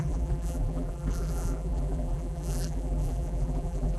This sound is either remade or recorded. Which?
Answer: remade